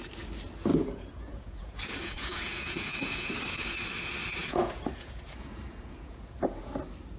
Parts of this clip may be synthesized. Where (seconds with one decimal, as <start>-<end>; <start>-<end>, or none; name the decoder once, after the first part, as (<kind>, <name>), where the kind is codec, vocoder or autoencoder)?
0.7-3.3 (vocoder, Vocos); 4.4-6.7